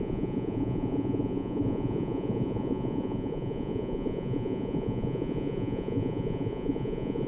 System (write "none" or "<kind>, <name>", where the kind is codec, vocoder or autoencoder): vocoder, Vocos